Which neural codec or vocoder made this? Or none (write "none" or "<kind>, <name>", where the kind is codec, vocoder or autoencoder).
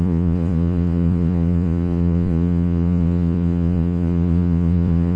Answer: vocoder, Vocos